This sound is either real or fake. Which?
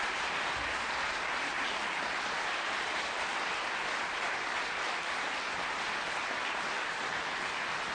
real